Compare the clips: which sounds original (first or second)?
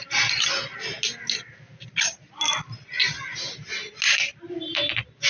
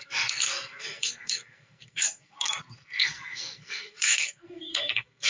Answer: first